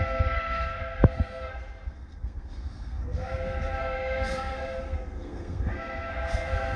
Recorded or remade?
remade